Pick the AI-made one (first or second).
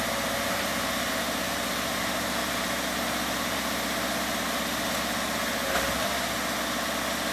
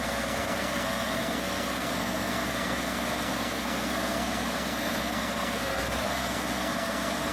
second